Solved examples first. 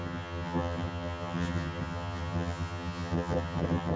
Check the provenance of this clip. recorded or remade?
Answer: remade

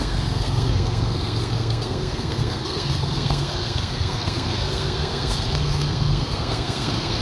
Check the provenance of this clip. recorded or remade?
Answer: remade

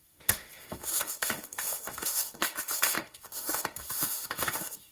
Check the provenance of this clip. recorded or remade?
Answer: remade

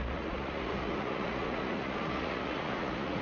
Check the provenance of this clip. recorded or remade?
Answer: remade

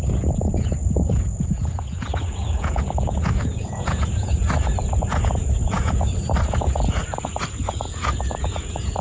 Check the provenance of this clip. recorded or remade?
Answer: remade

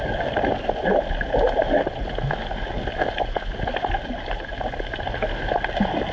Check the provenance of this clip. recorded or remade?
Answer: recorded